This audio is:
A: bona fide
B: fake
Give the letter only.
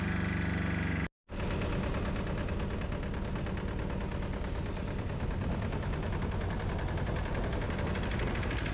A